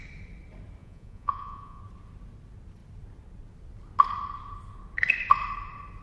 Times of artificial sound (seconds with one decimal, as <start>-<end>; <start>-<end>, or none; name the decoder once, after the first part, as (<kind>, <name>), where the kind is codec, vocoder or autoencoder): 0.8-1.8 (vocoder, Vocos)